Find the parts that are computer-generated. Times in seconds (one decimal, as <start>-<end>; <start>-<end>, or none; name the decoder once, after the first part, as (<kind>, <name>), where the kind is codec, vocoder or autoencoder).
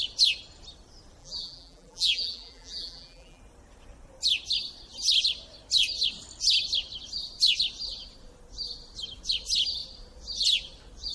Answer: 1.2-3.4 (vocoder, BigVGAN v2)